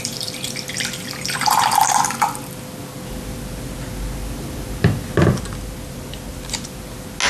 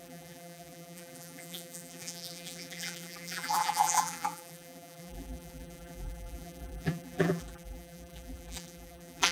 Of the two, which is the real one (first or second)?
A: first